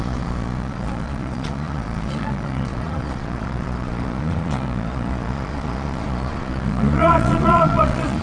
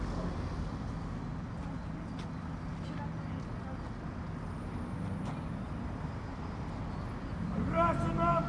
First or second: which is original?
second